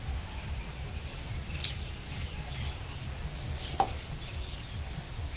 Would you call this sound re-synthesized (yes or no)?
no